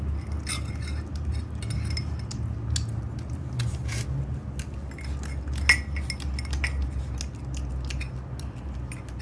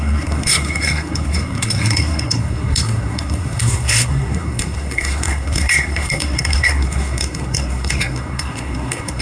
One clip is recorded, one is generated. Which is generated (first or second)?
second